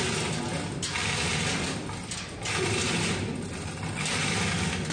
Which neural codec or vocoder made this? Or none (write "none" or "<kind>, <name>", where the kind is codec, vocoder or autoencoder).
none